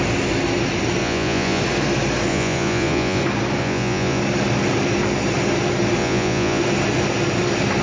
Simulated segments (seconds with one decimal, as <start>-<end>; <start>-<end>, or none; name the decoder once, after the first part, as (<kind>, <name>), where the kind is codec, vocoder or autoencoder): 1.0-1.6 (vocoder, Vocos); 2.3-3.2; 3.6-4.2; 6.0-6.6